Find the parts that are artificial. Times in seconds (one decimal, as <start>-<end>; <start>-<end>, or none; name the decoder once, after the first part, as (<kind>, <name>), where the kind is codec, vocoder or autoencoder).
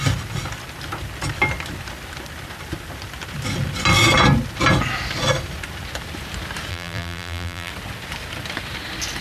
6.7-7.7 (vocoder, BigVGAN v2)